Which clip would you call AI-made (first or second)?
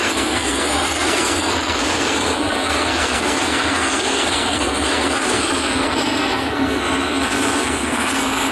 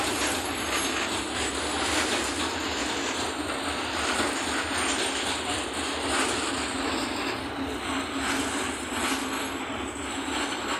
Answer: first